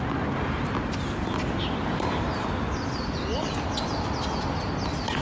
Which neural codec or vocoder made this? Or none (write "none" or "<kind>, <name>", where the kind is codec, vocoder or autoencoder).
none